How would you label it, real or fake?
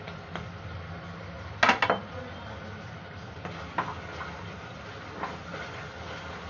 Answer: real